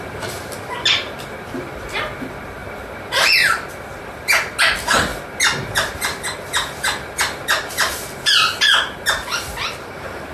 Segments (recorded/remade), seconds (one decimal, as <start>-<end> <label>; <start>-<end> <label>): 0.0-10.3 recorded